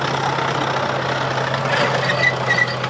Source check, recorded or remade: recorded